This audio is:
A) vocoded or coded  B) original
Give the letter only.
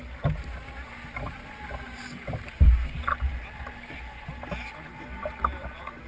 B